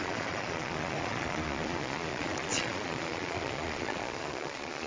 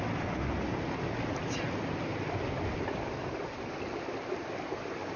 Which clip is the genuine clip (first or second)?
second